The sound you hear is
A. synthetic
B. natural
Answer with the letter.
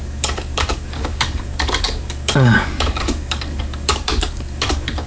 A